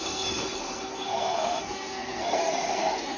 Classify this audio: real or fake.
fake